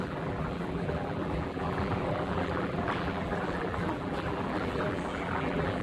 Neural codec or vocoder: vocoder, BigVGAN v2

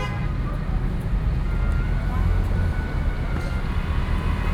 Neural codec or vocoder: none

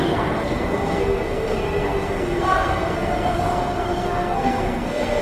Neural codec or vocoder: codec, SNAC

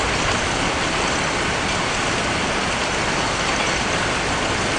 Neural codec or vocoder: none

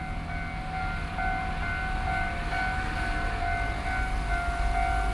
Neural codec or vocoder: none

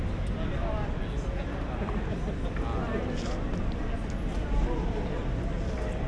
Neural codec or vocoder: none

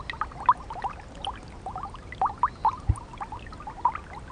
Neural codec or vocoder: none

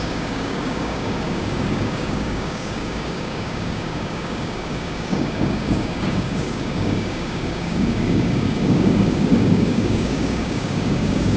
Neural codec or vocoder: codec, DAC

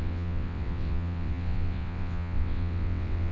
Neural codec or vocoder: vocoder, WaveNeXt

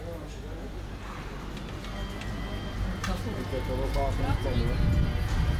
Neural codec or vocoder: none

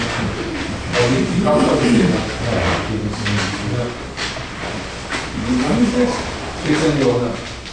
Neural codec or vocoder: none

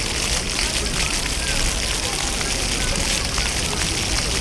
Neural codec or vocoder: none